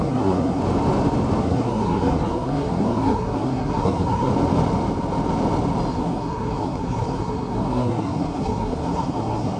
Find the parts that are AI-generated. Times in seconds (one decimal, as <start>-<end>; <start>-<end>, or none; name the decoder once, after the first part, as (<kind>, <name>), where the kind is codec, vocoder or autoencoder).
0.0-0.6 (codec, SNAC); 1.4-4.3; 5.9-9.6